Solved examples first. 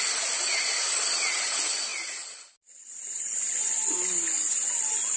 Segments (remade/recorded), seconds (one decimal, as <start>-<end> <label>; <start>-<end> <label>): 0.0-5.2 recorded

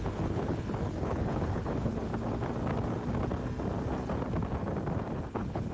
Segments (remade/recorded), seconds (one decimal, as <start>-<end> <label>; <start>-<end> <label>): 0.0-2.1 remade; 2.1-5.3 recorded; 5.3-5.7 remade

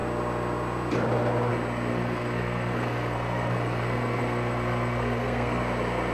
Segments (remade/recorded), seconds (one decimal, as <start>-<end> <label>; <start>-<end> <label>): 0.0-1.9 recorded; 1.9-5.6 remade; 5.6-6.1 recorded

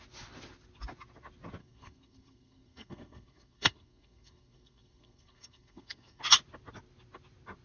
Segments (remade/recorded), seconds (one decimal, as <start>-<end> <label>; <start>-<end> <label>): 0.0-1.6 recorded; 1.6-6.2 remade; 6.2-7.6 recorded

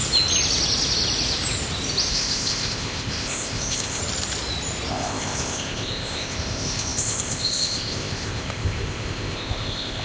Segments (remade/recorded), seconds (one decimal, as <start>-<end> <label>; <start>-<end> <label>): 0.0-2.1 recorded; 2.1-4.0 remade; 4.0-4.9 recorded; 4.9-10.0 remade

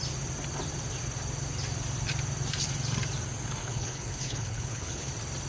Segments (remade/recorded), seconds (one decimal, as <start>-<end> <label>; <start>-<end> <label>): 0.0-3.6 recorded; 3.6-5.1 remade; 5.1-5.5 recorded

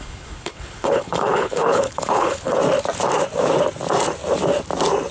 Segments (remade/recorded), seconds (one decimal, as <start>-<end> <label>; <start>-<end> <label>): 0.0-2.6 remade; 2.6-5.1 recorded

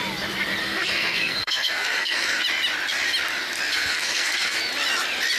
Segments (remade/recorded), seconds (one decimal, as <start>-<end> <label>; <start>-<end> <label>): 0.0-0.6 recorded; 0.6-2.4 remade; 2.4-3.7 recorded; 3.7-4.6 remade; 4.6-5.4 recorded